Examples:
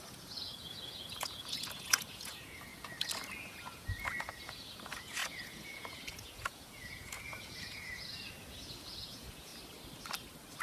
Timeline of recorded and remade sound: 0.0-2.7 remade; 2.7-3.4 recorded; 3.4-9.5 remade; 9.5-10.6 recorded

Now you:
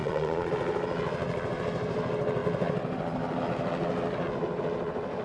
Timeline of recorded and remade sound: 0.0-0.5 remade; 0.5-5.2 recorded

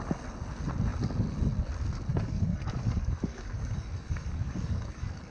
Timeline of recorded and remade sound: 0.0-2.1 recorded; 2.1-5.3 remade

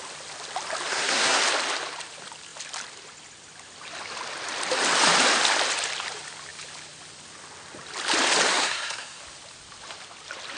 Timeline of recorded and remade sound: 0.0-0.9 recorded; 0.9-1.4 remade; 1.4-8.5 recorded; 8.5-9.2 remade; 9.2-10.6 recorded

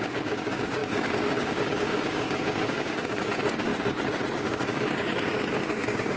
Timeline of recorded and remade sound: 0.0-3.7 remade; 3.7-4.4 recorded; 4.4-6.2 remade

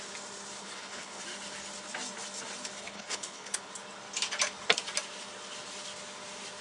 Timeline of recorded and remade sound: 0.0-0.6 recorded; 0.6-1.2 remade; 1.2-2.8 recorded; 2.8-3.7 remade; 3.7-6.6 recorded